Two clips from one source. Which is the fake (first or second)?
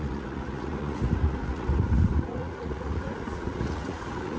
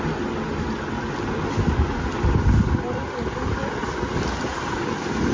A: first